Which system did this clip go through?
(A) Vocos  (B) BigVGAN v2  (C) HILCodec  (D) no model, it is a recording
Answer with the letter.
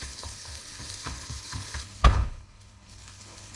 C